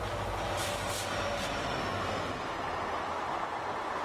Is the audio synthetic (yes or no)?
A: no